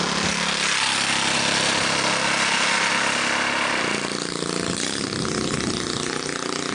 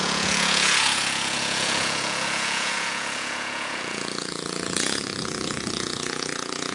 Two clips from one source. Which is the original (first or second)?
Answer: first